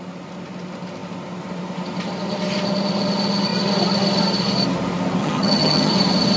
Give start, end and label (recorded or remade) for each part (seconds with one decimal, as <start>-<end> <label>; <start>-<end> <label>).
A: 0.0-5.2 recorded; 5.2-5.9 remade; 5.9-6.4 recorded